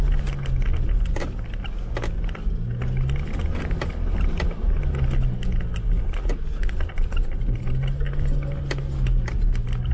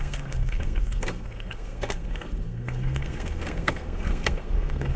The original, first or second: first